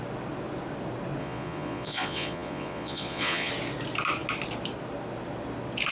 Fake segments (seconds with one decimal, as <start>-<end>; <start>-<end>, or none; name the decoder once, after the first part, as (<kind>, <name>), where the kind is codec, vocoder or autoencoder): 1.2-3.5 (vocoder, Vocos)